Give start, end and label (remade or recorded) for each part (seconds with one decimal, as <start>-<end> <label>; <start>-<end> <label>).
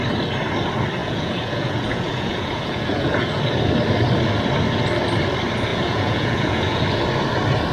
0.0-1.0 recorded; 1.0-3.4 remade; 3.4-5.7 recorded; 5.7-6.8 remade; 6.8-7.7 recorded